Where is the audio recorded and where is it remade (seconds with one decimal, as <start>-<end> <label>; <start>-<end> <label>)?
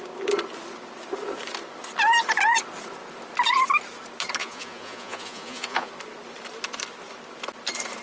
0.0-4.4 recorded; 4.4-5.9 remade; 5.9-8.0 recorded